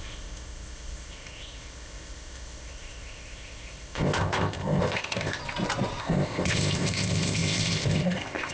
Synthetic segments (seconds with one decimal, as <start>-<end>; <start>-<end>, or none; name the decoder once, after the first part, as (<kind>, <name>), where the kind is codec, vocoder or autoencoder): 0.0-5.4 (codec, ZipCodec); 6.0-8.5